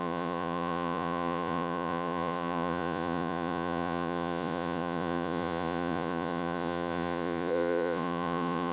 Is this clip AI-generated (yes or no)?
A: yes